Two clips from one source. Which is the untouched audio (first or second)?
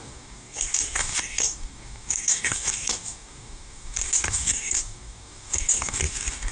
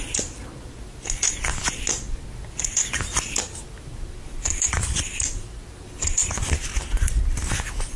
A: second